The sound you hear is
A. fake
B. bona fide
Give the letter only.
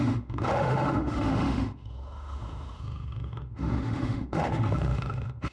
A